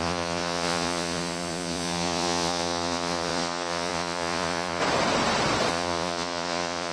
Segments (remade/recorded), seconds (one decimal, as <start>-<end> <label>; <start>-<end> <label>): 0.0-4.8 remade; 4.8-5.7 recorded; 5.7-6.9 remade